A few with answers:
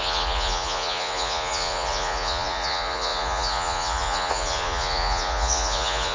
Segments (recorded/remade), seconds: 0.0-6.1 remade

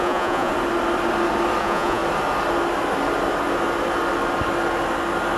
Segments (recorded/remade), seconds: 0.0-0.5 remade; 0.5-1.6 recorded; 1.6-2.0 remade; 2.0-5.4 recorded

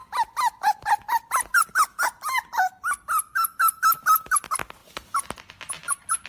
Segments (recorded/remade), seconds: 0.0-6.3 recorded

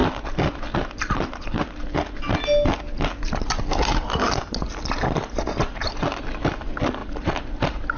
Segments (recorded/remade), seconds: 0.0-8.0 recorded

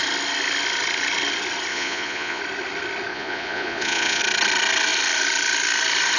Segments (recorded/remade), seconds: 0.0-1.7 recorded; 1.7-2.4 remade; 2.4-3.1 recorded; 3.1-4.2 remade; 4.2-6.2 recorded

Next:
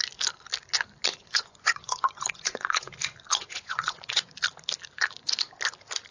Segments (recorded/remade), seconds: 0.0-1.1 recorded; 1.1-2.9 remade; 2.9-3.3 recorded; 3.3-4.3 remade; 4.3-6.1 recorded

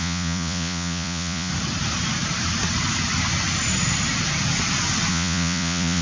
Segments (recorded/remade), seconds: 0.0-1.5 remade; 1.5-5.1 recorded; 5.1-6.0 remade

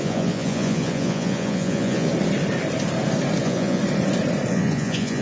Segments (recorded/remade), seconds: 0.0-2.1 remade; 2.1-3.4 recorded; 3.4-3.8 remade; 3.8-4.5 recorded; 4.5-5.2 remade